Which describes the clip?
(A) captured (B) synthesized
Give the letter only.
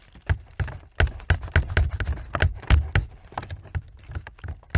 A